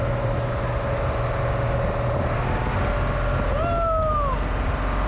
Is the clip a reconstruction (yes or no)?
no